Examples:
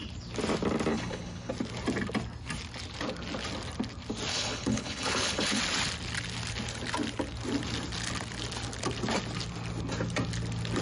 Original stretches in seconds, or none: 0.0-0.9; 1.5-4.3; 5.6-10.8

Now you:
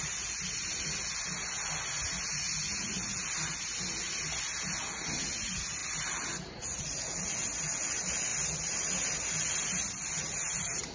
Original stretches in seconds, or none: 0.0-10.9